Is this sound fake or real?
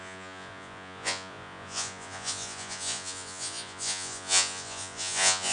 fake